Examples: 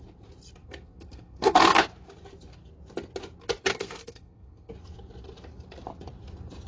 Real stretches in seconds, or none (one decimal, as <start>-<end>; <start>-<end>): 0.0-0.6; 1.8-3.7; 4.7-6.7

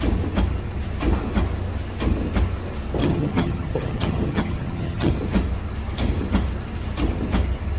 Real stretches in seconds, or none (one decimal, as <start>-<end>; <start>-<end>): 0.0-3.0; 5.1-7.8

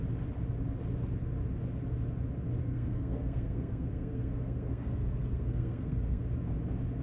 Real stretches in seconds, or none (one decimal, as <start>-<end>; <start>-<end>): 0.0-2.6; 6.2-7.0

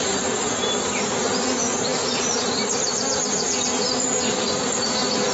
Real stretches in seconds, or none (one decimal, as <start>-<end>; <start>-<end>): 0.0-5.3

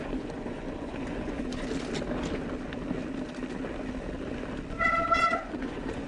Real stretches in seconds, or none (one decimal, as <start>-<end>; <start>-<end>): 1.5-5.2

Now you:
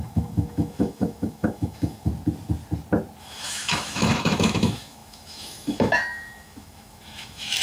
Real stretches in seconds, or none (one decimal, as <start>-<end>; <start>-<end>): 2.1-3.2

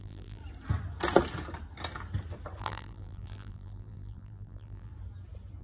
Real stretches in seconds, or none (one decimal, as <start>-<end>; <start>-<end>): 0.4-2.6; 4.9-5.6